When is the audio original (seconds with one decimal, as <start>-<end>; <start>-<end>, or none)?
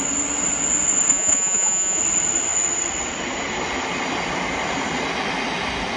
0.0-1.1; 2.0-6.0